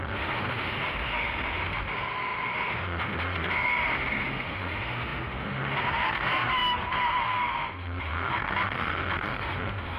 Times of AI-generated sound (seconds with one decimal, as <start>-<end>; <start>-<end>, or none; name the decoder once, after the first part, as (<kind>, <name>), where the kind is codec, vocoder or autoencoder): 0.0-10.0 (autoencoder, DAC-VAE)